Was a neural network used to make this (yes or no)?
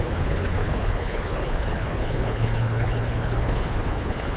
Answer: yes